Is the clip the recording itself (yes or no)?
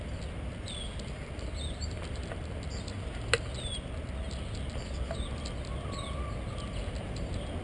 yes